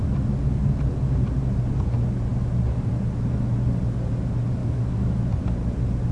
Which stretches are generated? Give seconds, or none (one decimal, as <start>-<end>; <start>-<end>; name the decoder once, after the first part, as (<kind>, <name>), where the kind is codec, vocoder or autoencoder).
4.6-5.2 (codec, DAC)